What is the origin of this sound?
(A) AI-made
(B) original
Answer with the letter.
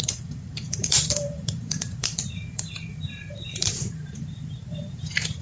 A